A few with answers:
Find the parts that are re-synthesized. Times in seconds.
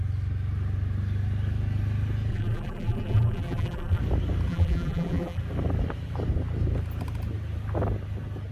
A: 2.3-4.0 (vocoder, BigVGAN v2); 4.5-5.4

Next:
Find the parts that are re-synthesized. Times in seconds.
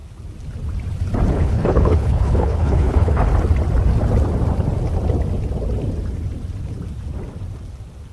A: 1.3-3.3 (codec, HILCodec)